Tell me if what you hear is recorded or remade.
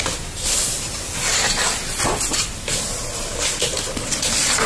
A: recorded